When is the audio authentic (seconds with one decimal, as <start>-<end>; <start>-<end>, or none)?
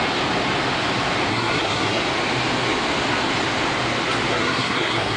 0.0-1.3; 2.0-4.3